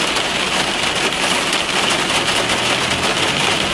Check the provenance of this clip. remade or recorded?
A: recorded